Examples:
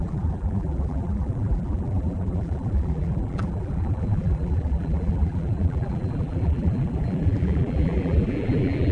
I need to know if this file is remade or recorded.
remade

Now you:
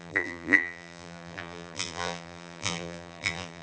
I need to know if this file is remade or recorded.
remade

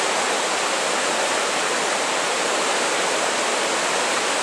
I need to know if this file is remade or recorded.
recorded